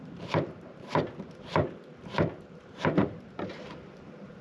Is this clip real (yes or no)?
no